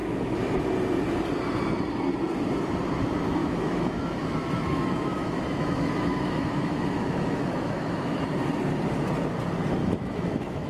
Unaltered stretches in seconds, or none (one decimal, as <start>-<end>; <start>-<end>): 0.6-3.4; 8.2-9.8